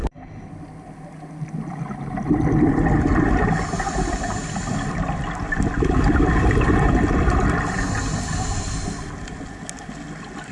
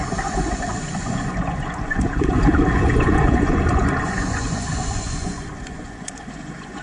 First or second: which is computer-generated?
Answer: second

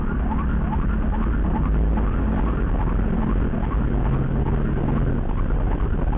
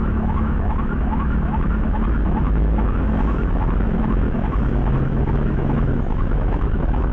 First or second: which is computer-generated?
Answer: second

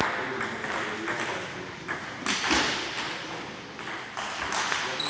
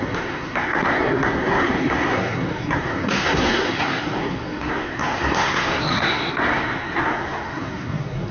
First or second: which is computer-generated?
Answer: second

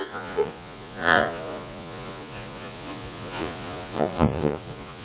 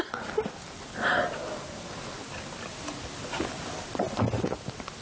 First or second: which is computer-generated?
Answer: first